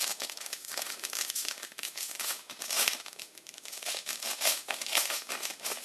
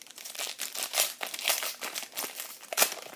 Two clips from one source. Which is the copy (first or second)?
first